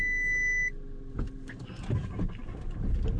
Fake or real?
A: real